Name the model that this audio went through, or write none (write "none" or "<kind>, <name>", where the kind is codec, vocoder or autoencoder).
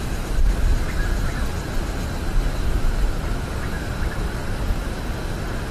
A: vocoder, BigVGAN v2